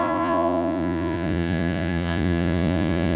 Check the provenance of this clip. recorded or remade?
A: remade